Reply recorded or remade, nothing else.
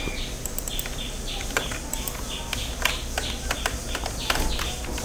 recorded